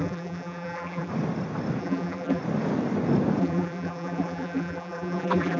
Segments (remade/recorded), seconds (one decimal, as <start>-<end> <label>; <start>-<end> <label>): 0.0-1.1 remade; 1.1-1.8 recorded; 1.8-2.4 remade; 2.4-3.4 recorded; 3.4-5.6 remade